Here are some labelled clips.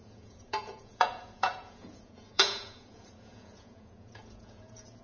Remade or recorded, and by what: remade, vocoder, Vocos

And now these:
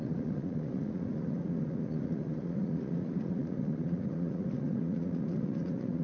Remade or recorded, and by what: remade, vocoder, Vocos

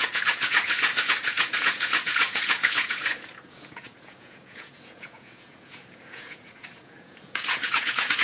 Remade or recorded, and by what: remade, vocoder, Vocos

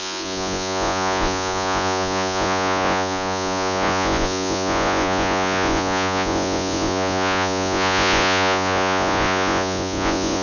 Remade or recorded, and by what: remade, vocoder, Vocos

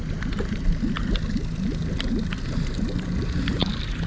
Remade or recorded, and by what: recorded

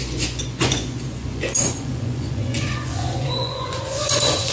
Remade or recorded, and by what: remade, vocoder, Vocos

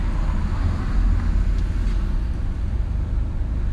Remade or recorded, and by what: recorded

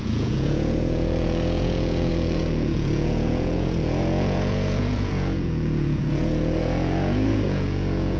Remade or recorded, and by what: remade, vocoder, Vocos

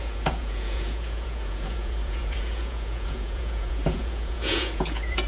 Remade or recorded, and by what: remade, vocoder, Vocos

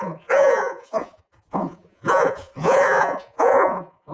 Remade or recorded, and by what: remade, vocoder, Vocos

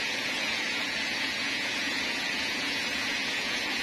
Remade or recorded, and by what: remade, vocoder, Vocos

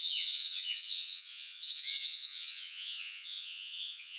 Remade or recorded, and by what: remade, vocoder, Vocos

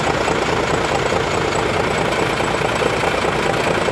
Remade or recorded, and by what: recorded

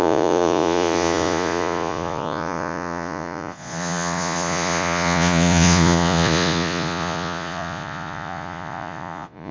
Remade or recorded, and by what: remade, vocoder, Vocos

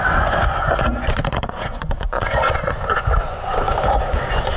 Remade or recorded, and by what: remade, vocoder, Vocos